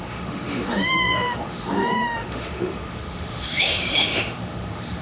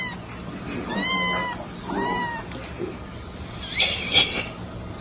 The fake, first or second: first